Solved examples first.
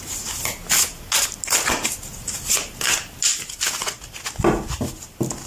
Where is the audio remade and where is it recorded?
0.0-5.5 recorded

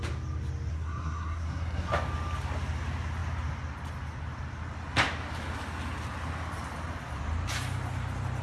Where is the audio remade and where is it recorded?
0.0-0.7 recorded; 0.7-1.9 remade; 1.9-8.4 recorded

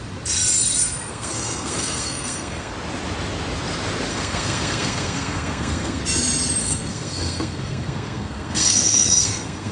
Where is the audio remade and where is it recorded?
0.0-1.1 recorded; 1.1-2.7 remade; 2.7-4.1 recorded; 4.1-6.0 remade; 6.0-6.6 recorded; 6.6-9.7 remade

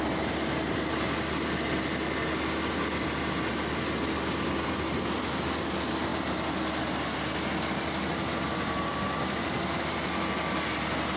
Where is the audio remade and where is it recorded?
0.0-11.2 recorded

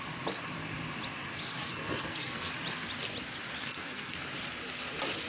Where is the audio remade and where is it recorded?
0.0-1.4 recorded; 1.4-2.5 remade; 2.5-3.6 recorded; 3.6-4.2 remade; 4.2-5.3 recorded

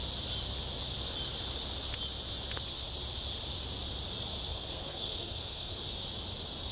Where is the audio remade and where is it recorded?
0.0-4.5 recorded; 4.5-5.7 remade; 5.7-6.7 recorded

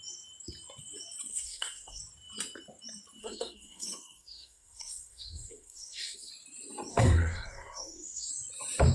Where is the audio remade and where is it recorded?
0.0-1.3 recorded; 1.3-2.0 remade; 2.0-3.2 recorded; 3.2-6.3 remade; 6.3-6.9 recorded; 6.9-8.3 remade; 8.3-8.9 recorded